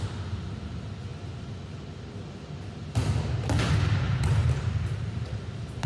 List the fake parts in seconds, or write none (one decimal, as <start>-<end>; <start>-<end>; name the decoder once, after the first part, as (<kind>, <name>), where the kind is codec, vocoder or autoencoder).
4.4-5.5 (vocoder, BigVGAN v2)